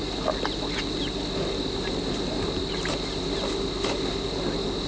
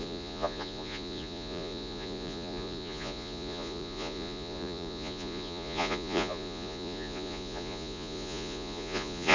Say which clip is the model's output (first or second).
second